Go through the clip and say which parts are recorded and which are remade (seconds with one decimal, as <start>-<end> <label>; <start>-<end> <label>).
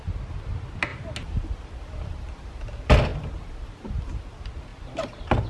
0.0-5.5 recorded